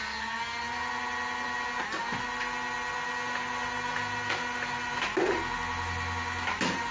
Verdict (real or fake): real